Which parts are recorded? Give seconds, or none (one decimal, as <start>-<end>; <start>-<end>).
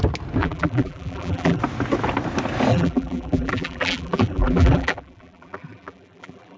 0.0-0.4; 1.6-2.7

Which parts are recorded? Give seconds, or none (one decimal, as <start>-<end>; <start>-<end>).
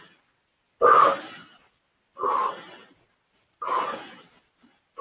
0.0-5.0